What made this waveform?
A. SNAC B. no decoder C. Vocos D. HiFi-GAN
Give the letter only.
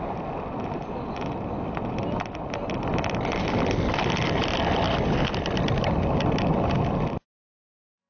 B